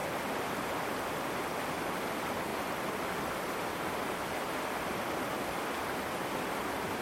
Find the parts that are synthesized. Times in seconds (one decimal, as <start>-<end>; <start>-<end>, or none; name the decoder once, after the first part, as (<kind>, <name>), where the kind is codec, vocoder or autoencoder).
0.0-1.0 (vocoder, BigVGAN v2); 2.5-4.0